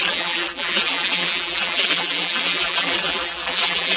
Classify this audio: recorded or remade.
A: remade